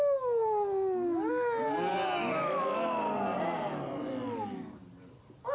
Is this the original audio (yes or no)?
yes